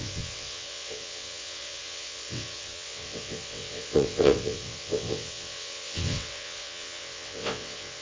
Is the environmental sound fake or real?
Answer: fake